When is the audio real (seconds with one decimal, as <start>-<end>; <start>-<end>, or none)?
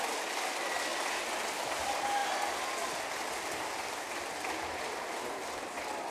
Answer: 0.0-6.1